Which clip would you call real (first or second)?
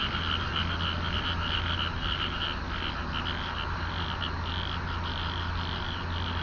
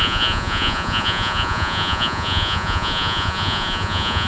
first